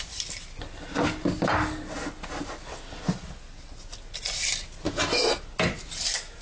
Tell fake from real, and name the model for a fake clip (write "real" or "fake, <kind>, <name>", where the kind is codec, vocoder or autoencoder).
real